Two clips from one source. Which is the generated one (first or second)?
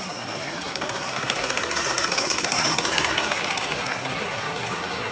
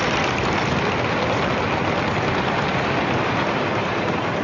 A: first